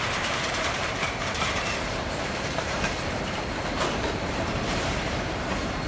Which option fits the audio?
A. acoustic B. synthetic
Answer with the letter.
B